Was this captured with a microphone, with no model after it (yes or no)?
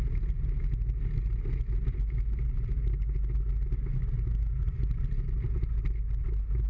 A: yes